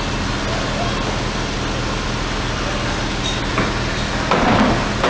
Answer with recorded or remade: recorded